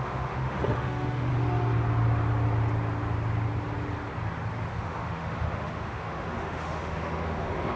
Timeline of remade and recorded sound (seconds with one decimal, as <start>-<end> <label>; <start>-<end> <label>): 0.0-1.3 remade; 1.3-4.7 recorded; 4.7-7.8 remade